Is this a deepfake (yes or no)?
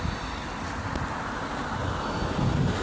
no